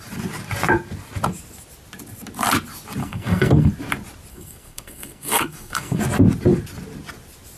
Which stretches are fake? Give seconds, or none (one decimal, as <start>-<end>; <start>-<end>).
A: 3.0-3.7; 4.3-6.0